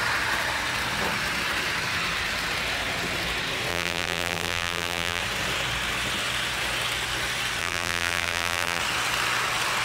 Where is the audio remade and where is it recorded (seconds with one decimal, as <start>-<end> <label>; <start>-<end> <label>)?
0.0-3.7 recorded; 3.7-5.2 remade; 5.2-7.6 recorded; 7.6-8.8 remade; 8.8-9.8 recorded